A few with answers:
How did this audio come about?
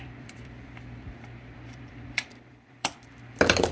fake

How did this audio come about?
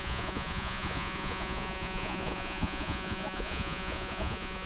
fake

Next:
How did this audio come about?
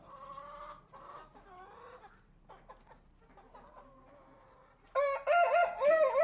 real